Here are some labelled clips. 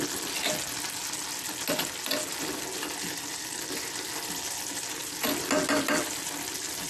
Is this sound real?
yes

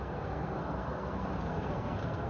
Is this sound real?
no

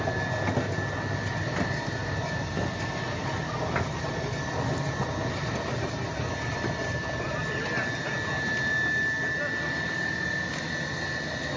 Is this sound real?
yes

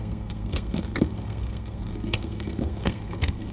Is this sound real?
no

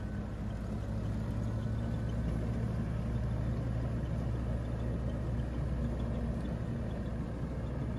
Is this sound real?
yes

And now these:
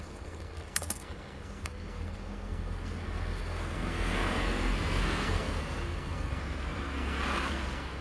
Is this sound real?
no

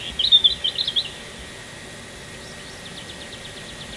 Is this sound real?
yes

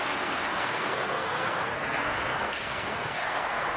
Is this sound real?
no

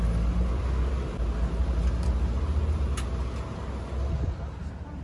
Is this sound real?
yes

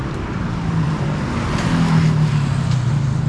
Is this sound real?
yes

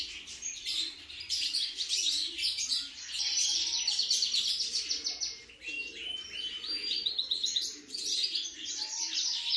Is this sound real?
yes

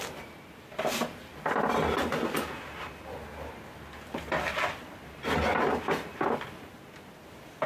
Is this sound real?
yes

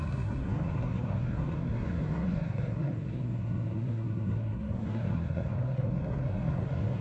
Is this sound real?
no